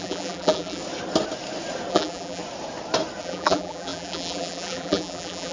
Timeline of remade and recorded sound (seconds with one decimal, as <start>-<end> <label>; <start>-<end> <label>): 0.0-0.8 remade; 0.8-1.9 recorded; 1.9-2.4 remade; 2.4-3.2 recorded; 3.2-5.5 remade